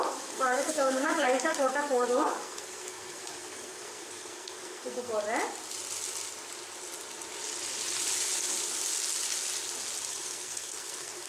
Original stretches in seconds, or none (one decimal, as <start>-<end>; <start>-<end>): 5.1-10.1